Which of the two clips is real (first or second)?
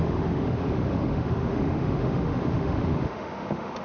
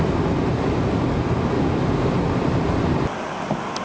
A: second